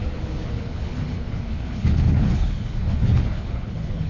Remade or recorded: remade